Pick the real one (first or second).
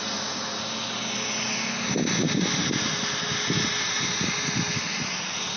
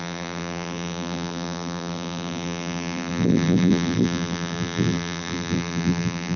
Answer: first